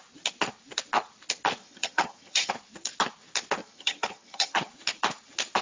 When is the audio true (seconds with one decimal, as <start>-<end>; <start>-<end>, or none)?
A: 0.0-1.6; 2.5-3.6; 4.7-5.6